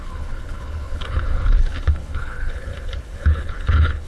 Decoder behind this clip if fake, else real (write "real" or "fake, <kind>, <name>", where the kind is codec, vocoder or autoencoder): fake, codec, HILCodec